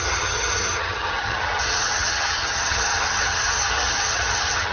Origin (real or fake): fake